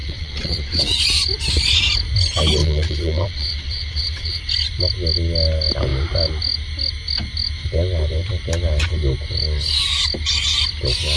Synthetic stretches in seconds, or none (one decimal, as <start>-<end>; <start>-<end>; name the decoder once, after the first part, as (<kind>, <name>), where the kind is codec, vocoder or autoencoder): 0.0-1.0 (vocoder, WaveNeXt); 2.6-4.4